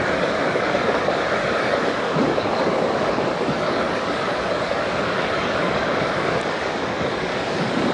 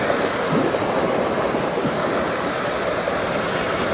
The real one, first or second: second